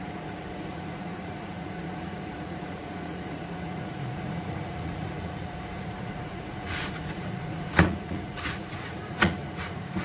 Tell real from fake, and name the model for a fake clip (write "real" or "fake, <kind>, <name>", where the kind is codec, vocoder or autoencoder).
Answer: fake, vocoder, Vocos